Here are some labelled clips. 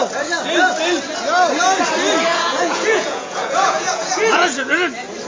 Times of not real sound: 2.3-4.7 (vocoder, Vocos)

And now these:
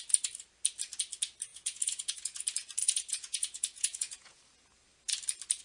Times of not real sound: 1.5-2.4 (vocoder, Vocos); 2.8-4.4